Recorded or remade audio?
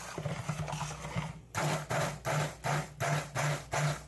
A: recorded